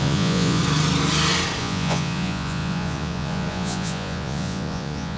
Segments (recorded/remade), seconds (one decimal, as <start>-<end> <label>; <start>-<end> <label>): 0.0-0.6 remade; 0.6-1.6 recorded; 1.6-5.2 remade